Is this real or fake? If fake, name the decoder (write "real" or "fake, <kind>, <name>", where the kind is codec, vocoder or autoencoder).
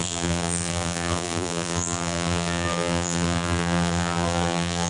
fake, vocoder, BigVGAN v2